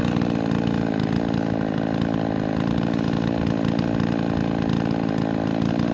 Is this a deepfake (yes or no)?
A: no